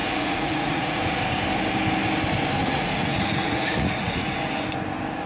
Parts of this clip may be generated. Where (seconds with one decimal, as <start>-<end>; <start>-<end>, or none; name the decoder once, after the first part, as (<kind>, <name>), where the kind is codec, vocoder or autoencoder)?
0.0-1.0 (vocoder, Vocos); 2.6-4.3